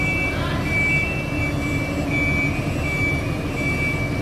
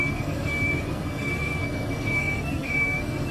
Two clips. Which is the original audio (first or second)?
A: first